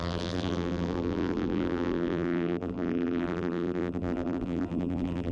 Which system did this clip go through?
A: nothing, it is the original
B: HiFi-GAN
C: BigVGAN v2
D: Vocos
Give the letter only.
C